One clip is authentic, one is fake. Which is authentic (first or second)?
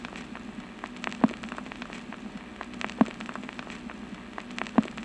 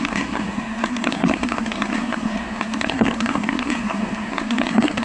first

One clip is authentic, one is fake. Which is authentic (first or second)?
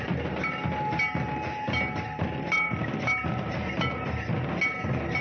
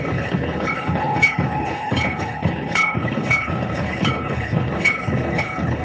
first